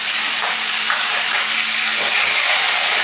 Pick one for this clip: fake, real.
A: fake